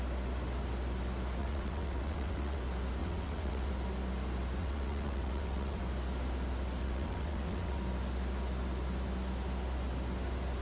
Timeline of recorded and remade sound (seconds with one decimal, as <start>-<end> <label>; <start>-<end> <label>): 0.0-1.4 recorded; 1.4-2.6 remade; 2.6-3.0 recorded; 3.0-3.7 remade; 3.7-4.6 recorded; 4.6-5.8 remade; 5.8-6.8 recorded; 6.8-7.8 remade; 7.8-10.6 recorded